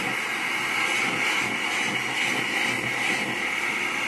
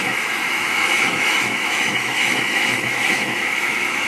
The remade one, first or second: second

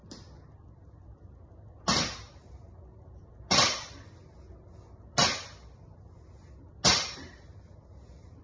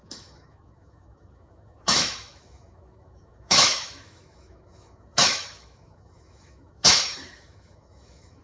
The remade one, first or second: second